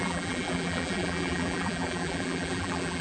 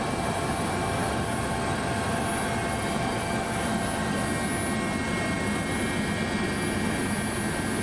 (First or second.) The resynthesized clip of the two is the first